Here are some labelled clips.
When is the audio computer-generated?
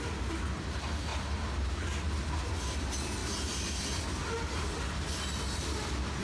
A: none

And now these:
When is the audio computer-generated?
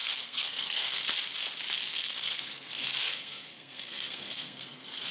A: 0.0-1.0 (codec, SNAC); 1.9-5.1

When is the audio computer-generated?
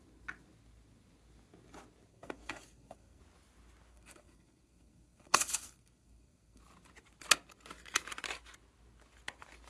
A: 2.1-3.2 (codec, SNAC); 3.9-6.6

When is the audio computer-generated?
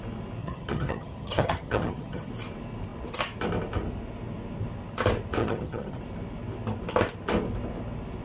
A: 0.4-2.3 (vocoder, HiFi-GAN); 5.4-6.0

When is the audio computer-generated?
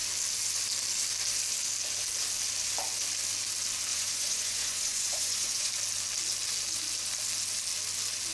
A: 3.9-5.7 (vocoder, Vocos)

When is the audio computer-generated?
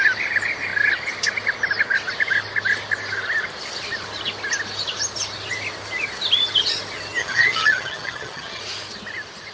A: 7.2-8.6 (vocoder, HiFi-GAN)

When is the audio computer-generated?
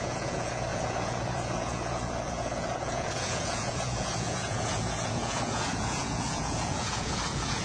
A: 0.0-7.6 (vocoder, Vocos)